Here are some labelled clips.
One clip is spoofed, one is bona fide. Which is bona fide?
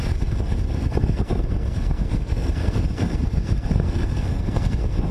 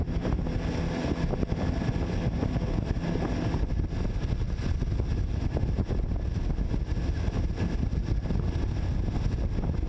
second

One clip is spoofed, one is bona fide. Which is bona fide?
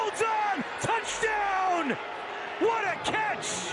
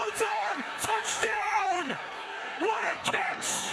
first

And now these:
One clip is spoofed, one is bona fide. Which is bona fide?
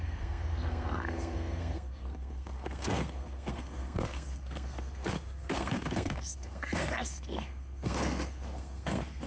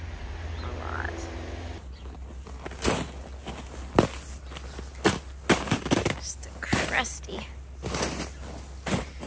second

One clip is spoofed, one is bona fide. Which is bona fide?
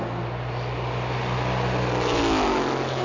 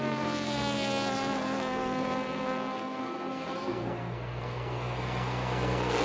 first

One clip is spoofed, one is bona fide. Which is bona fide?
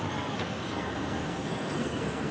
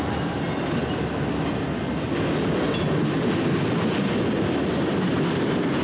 second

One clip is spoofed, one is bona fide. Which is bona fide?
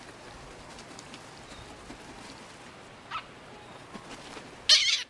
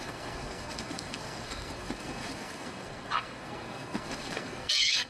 first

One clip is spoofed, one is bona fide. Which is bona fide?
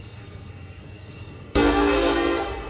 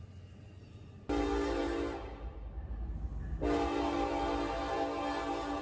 second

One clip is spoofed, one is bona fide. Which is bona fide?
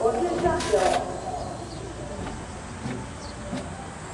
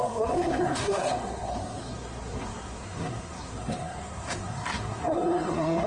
first